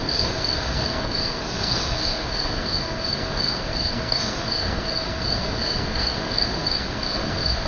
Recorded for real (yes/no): no